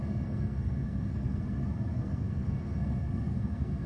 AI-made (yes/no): yes